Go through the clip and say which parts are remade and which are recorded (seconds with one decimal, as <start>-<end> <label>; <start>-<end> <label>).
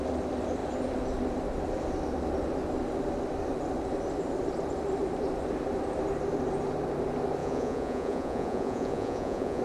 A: 0.0-7.4 recorded; 7.4-9.6 remade